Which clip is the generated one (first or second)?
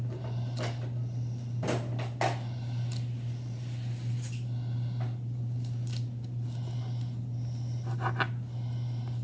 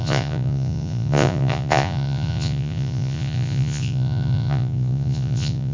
second